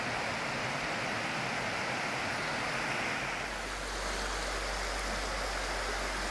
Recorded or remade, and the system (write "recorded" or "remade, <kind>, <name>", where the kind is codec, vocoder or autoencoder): recorded